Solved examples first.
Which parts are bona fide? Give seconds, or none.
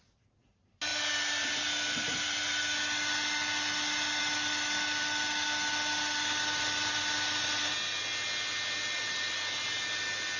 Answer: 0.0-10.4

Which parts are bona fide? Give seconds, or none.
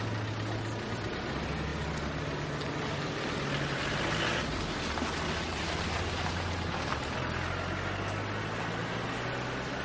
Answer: 0.0-9.8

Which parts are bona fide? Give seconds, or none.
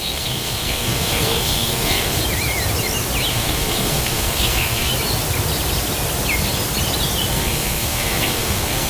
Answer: 2.2-3.3; 4.9-7.3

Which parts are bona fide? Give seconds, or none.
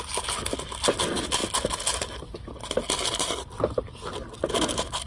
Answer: 0.0-5.1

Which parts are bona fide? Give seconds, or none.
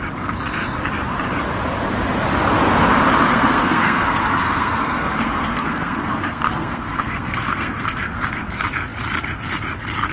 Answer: 0.0-3.3; 8.2-10.1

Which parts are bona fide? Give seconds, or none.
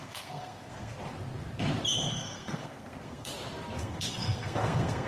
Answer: 0.9-2.1; 3.3-3.8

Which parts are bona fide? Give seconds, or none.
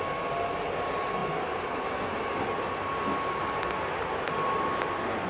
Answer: 0.0-5.3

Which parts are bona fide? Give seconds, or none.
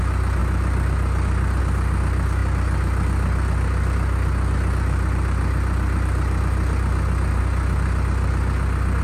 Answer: 0.0-9.0